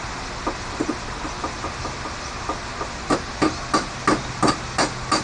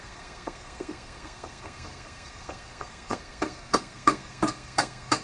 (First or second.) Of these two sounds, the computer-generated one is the second